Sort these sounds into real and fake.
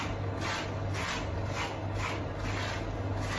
real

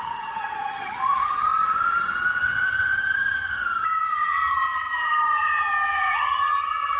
fake